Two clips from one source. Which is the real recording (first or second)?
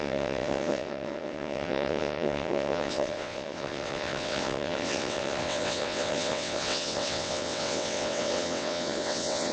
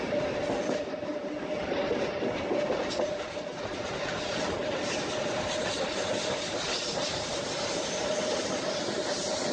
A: second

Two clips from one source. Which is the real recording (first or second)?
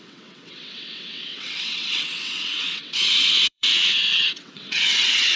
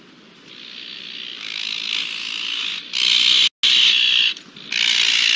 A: second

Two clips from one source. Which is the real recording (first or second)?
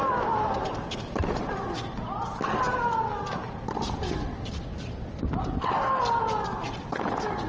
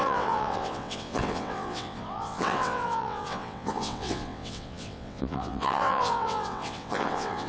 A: first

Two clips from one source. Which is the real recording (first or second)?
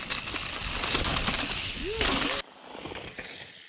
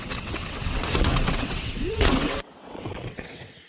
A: first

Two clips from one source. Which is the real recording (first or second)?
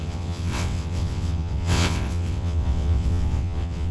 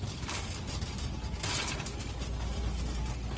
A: second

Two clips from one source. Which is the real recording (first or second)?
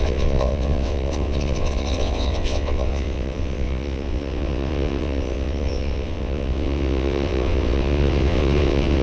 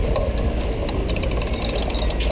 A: second